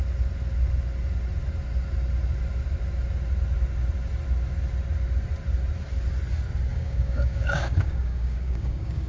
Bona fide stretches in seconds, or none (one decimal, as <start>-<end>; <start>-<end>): 0.0-6.7